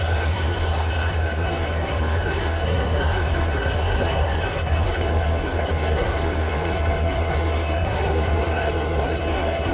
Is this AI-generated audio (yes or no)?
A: yes